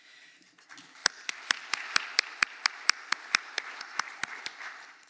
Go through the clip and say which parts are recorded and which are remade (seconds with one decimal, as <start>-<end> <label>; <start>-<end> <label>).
0.0-1.0 remade; 1.0-3.8 recorded; 3.8-5.1 remade